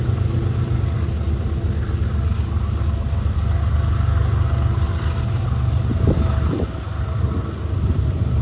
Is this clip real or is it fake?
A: real